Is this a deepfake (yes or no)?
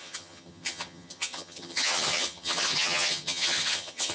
yes